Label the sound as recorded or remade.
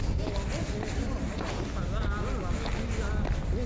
recorded